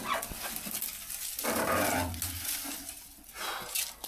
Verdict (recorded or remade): recorded